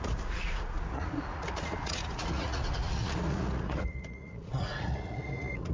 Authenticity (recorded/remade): remade